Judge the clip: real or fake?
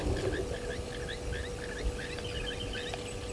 real